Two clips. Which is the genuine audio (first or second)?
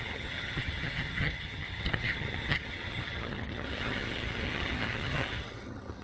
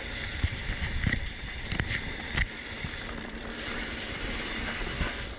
second